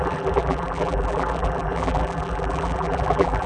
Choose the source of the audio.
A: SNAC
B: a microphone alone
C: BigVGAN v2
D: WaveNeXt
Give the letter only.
C